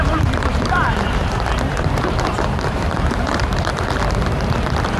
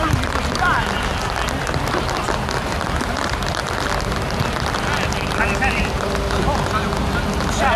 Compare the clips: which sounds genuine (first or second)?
second